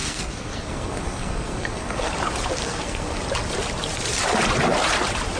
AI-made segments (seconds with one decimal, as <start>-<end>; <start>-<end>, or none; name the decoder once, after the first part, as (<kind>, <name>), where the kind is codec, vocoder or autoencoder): 0.0-2.1 (codec, SNAC); 2.6-3.2